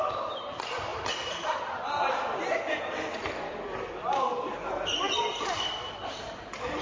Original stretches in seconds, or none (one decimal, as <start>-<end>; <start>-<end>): 0.0-6.8